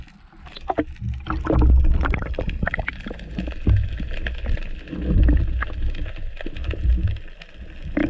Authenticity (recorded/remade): recorded